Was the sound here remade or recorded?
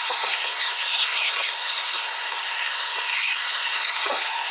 remade